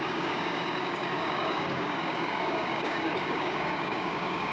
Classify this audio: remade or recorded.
remade